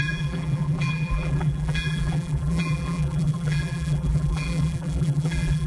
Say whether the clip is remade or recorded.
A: remade